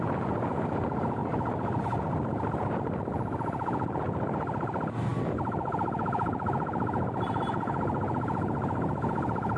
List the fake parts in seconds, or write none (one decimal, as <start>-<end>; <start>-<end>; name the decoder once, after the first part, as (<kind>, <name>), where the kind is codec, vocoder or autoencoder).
none